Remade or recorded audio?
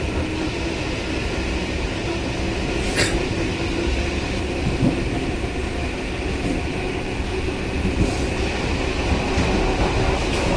recorded